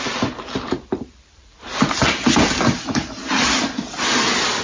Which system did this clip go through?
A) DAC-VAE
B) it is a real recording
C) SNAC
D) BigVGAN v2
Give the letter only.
D